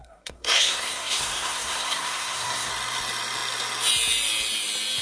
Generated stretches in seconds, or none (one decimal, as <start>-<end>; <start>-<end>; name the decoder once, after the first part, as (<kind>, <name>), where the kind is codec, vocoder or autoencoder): 0.0-2.7 (codec, SNAC)